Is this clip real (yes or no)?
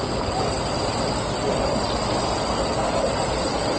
no